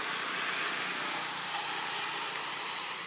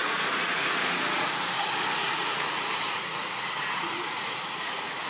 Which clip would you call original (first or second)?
first